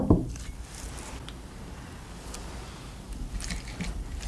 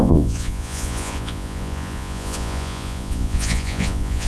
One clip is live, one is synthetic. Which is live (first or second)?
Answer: first